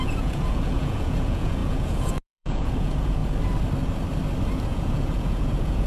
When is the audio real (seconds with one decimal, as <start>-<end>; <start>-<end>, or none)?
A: 3.2-4.7